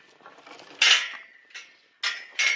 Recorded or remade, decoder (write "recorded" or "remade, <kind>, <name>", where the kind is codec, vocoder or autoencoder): recorded